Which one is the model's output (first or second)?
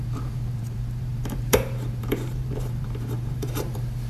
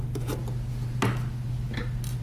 first